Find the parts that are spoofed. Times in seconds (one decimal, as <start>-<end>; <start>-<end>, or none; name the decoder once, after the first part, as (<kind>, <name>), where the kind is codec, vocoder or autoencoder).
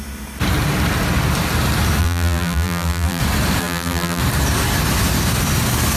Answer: 2.0-3.2 (vocoder, BigVGAN v2); 3.6-4.2